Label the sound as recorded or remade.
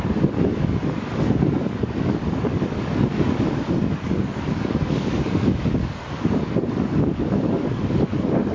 remade